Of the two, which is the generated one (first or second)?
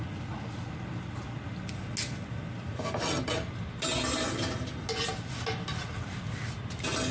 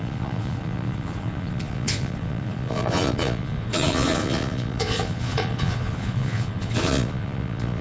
second